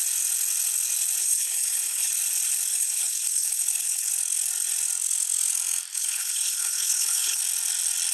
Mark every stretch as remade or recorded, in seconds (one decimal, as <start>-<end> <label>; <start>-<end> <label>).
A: 0.0-1.2 recorded; 1.2-2.1 remade; 2.1-2.7 recorded; 2.7-4.1 remade; 4.1-5.9 recorded; 5.9-7.4 remade; 7.4-8.1 recorded